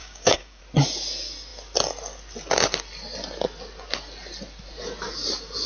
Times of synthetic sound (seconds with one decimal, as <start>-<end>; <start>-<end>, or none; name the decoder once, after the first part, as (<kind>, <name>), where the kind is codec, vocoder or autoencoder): 0.0-0.6 (codec, DAC)